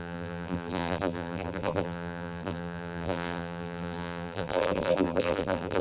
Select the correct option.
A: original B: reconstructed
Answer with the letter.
B